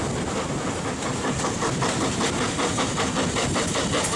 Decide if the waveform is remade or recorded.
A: recorded